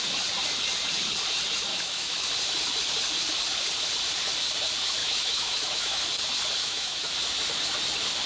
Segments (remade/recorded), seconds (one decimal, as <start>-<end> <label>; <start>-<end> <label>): 0.0-1.7 recorded; 1.7-2.3 remade; 2.3-5.0 recorded; 5.0-6.0 remade; 6.0-6.6 recorded; 6.6-7.1 remade; 7.1-8.3 recorded